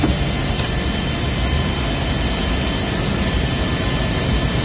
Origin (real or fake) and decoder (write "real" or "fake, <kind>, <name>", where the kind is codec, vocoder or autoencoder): real